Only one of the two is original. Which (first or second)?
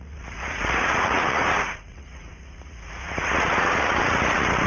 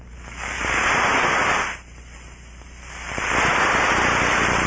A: second